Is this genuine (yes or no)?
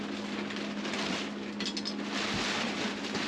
yes